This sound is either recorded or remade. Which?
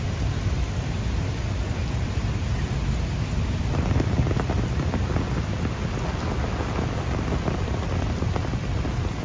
recorded